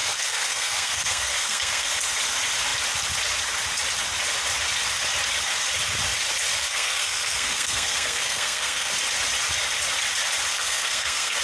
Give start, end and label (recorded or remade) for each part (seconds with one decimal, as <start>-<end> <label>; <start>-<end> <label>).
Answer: 0.0-1.9 remade; 1.9-6.6 recorded; 6.6-8.9 remade; 8.9-10.5 recorded; 10.5-11.4 remade